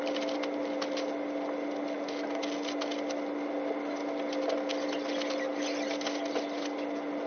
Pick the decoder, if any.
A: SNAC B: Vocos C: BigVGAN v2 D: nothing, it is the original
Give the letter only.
D